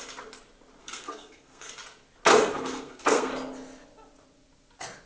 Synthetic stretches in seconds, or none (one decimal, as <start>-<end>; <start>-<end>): 0.8-1.7; 2.5-3.3